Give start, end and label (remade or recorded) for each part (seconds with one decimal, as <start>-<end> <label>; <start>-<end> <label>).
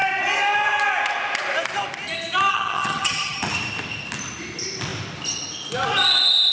0.0-2.5 recorded; 2.5-3.4 remade; 3.4-6.5 recorded